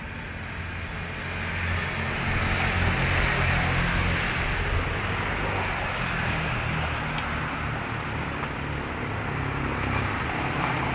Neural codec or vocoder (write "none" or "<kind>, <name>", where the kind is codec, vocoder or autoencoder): none